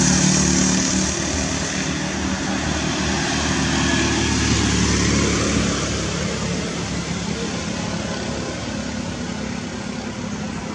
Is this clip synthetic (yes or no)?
no